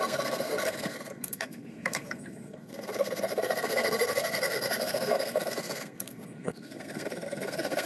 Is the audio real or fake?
fake